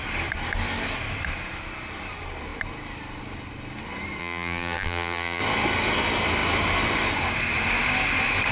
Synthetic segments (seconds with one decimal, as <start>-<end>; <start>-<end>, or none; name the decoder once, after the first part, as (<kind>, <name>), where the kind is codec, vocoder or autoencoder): 4.2-5.4 (vocoder, BigVGAN v2)

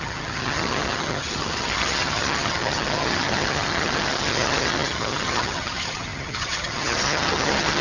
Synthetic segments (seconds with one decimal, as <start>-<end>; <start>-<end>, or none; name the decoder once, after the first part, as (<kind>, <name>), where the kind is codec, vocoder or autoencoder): 0.0-7.8 (vocoder, HiFi-GAN)